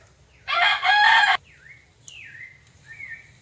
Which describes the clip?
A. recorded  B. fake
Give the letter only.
A